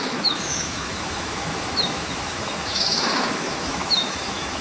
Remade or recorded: remade